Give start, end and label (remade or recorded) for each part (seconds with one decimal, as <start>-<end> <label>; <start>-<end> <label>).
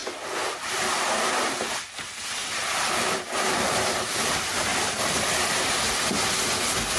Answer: 0.0-2.4 recorded; 2.4-4.3 remade; 4.3-4.7 recorded; 4.7-5.8 remade; 5.8-7.0 recorded